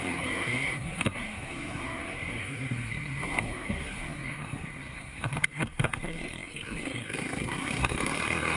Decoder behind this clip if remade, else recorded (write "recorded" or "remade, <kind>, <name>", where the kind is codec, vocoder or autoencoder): remade, codec, SNAC